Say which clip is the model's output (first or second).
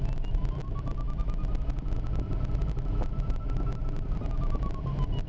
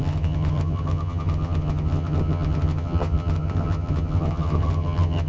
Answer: second